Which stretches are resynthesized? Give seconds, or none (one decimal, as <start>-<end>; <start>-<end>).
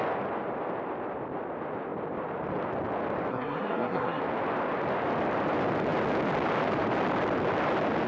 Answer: 3.3-4.2